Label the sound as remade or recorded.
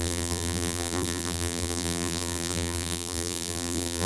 remade